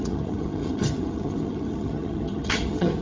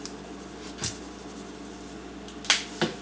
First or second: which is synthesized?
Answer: first